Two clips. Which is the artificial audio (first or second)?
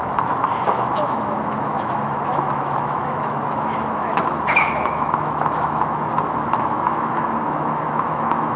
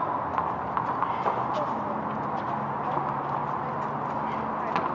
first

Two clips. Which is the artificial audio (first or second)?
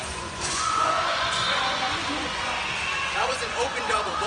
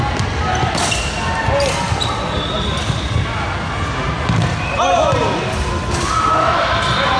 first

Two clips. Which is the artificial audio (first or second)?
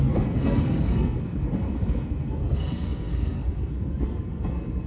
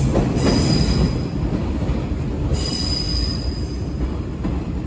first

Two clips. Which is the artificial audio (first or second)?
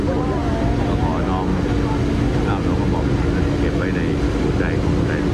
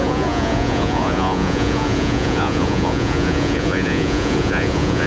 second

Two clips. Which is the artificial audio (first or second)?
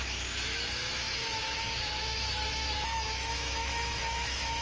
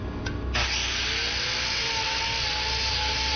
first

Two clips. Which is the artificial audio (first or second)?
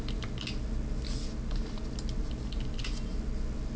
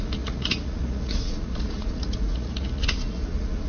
second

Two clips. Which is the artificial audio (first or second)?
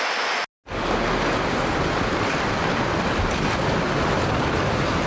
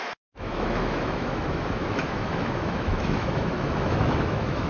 second